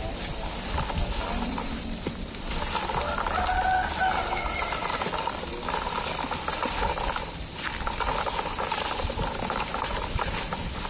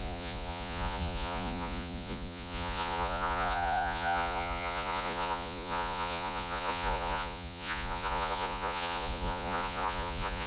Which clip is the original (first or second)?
first